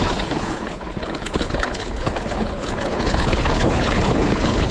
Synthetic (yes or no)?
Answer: yes